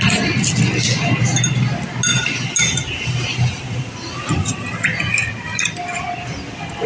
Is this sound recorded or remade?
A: recorded